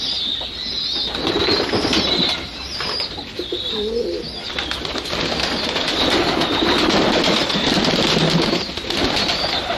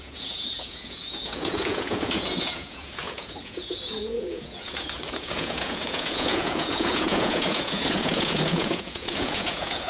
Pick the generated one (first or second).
second